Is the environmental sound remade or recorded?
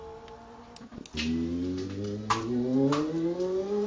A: recorded